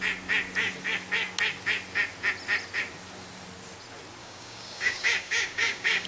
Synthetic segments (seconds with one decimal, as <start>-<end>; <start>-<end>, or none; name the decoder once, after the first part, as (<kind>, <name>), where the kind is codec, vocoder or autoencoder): 4.2-6.1 (codec, DAC)